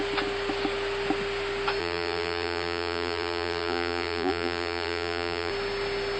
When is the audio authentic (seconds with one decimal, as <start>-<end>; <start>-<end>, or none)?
0.0-1.8; 5.5-6.2